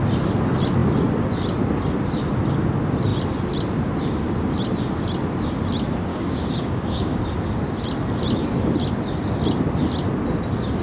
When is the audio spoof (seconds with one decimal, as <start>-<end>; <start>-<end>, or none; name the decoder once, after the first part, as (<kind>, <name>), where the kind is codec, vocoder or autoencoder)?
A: 6.1-7.2 (codec, DAC)